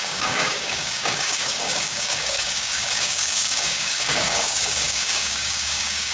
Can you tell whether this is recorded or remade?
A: remade